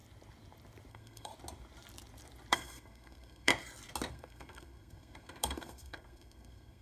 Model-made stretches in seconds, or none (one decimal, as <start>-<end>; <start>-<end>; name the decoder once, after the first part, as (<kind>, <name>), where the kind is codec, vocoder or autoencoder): 0.9-1.3 (codec, SNAC); 2.5-3.5; 4.1-6.8